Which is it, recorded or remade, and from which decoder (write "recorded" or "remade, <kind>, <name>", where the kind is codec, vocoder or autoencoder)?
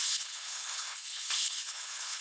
remade, codec, HILCodec